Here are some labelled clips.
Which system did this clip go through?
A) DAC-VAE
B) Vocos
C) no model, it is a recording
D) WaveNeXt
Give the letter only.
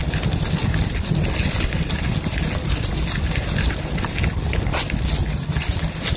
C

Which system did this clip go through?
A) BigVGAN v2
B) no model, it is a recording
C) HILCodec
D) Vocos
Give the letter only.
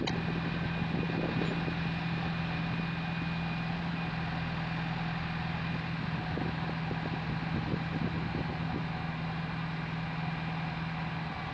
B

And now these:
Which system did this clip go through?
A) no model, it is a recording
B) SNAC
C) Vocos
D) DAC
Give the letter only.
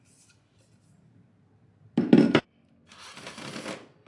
A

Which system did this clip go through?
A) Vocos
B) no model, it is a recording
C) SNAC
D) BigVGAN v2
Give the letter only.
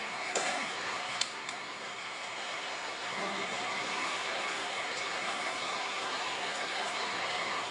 C